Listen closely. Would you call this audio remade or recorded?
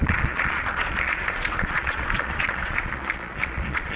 remade